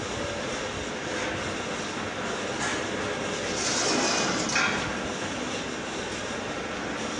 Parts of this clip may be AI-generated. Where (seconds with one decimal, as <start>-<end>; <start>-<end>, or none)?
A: none